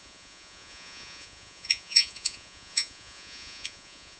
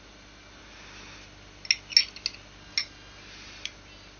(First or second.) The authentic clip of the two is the second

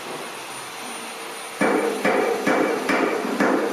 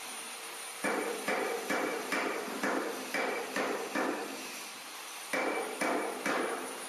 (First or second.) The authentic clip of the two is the first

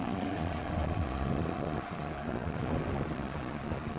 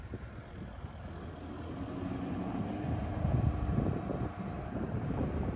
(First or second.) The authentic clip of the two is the second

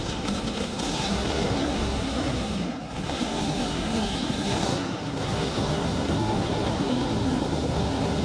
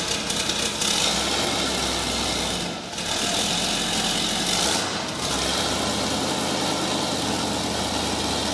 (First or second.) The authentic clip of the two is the second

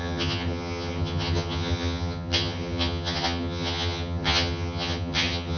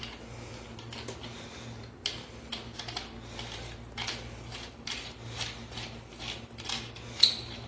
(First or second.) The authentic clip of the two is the second